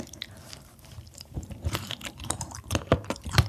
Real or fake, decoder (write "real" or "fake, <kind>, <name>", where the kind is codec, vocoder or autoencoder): fake, vocoder, BigVGAN v2